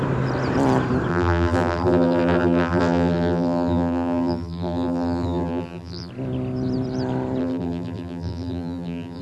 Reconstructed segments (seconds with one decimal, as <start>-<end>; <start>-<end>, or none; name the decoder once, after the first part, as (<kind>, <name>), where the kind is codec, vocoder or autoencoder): 1.1-6.1 (vocoder, BigVGAN v2); 7.4-9.2